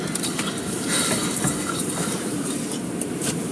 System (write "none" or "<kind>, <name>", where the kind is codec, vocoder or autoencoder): vocoder, BigVGAN v2